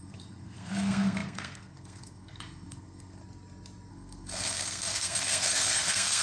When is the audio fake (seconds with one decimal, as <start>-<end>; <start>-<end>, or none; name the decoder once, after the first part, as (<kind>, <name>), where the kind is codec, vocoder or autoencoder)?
0.0-3.2 (codec, SNAC); 3.9-6.2